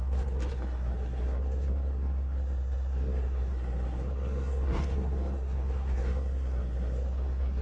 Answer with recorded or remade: remade